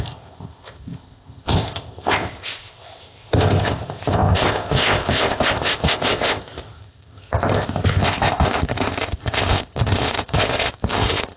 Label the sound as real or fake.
fake